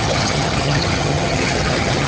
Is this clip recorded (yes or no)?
no